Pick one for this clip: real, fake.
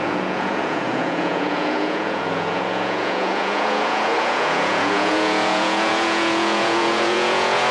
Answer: fake